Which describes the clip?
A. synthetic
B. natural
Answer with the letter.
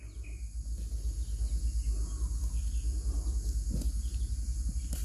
B